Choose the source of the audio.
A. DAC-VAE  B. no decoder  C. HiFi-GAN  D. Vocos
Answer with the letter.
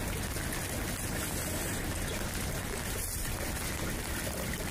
B